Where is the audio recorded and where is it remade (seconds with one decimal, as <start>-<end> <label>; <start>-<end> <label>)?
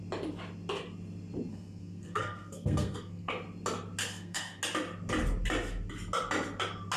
0.0-1.5 recorded; 1.5-3.3 remade; 3.3-4.0 recorded; 4.0-4.6 remade; 4.6-7.0 recorded